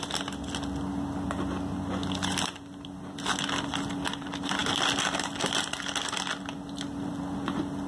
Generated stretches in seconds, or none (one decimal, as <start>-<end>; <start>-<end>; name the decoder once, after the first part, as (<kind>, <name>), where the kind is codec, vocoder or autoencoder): none